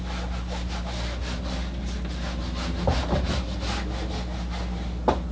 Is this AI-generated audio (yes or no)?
no